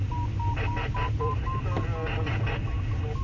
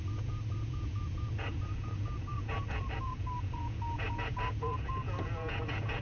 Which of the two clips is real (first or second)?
first